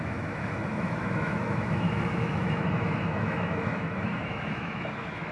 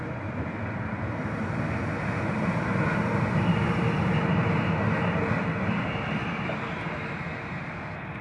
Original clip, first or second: second